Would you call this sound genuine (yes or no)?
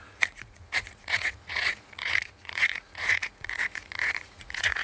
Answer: no